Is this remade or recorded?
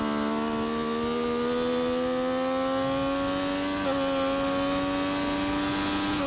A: recorded